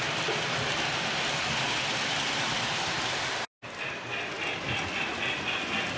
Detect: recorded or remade recorded